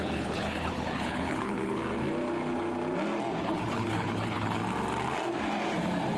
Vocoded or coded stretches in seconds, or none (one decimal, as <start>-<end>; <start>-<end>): 0.0-1.8; 3.4-4.6